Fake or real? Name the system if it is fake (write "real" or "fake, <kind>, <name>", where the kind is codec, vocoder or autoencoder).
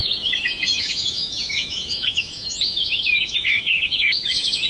fake, autoencoder, DAC-VAE